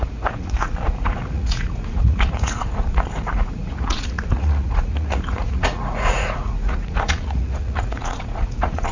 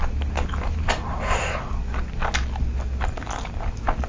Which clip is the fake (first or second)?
first